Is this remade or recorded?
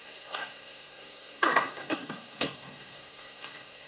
remade